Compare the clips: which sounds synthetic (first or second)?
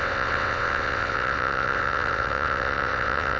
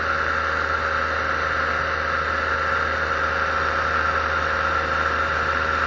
first